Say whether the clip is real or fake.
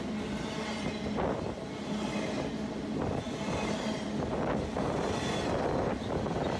real